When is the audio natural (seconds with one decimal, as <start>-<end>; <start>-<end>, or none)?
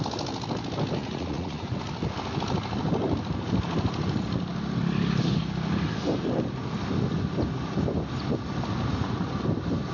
0.0-1.0; 1.8-9.9